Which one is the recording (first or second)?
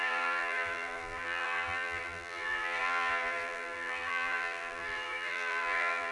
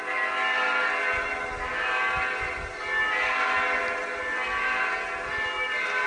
second